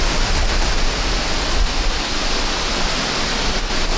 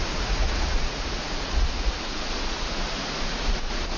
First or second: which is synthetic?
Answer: second